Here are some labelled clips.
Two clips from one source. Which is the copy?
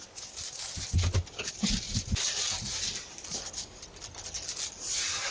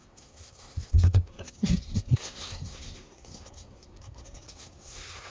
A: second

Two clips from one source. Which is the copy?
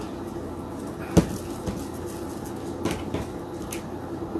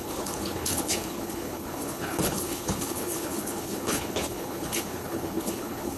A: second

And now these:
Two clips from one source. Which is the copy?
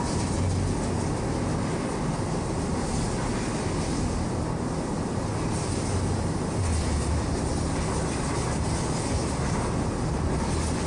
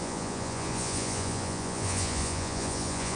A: second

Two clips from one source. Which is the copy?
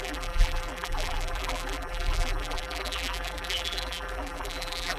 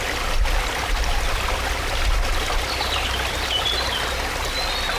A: first